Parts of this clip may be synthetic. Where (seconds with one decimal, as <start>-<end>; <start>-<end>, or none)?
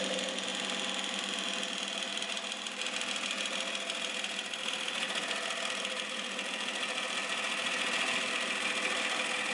none